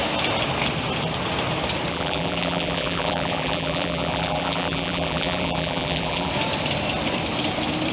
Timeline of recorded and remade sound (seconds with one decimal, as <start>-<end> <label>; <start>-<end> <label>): 0.0-1.9 recorded; 1.9-6.3 remade; 6.3-7.9 recorded